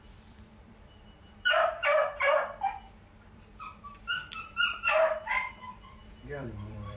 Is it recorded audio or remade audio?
remade